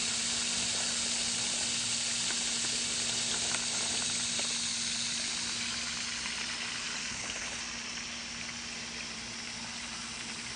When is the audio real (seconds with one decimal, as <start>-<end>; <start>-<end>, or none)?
0.0-7.1; 7.6-10.6